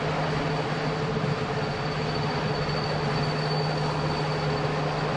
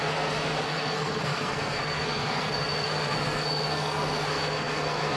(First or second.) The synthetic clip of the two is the second